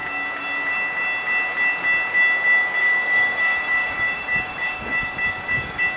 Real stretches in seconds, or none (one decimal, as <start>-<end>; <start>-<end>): 0.0-2.8